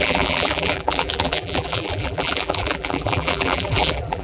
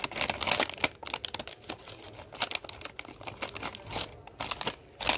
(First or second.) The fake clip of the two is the first